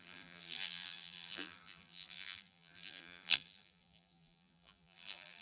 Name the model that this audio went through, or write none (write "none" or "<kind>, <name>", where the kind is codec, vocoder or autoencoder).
vocoder, BigVGAN v2